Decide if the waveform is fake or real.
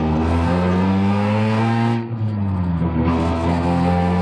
fake